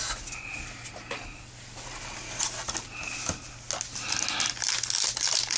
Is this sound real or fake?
real